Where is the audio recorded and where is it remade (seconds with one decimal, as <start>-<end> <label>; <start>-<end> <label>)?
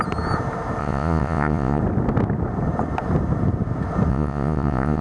0.0-0.8 recorded; 0.8-1.8 remade; 1.8-4.1 recorded; 4.1-5.0 remade